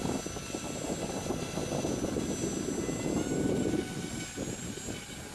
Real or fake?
real